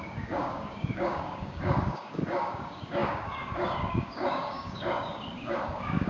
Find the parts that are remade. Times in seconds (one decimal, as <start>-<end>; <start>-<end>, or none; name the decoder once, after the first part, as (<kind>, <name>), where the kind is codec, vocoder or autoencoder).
0.0-6.1 (codec, DAC)

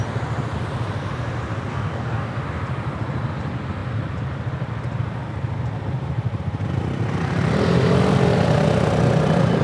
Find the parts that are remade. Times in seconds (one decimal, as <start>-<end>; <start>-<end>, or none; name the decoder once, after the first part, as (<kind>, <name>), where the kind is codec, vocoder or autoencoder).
1.7-2.4 (codec, DAC)

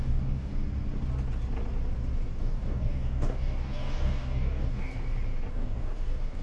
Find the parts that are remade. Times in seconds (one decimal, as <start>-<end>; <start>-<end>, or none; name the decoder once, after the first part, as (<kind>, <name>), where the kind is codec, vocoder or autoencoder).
0.0-0.5 (codec, DAC); 2.4-4.9; 5.5-6.4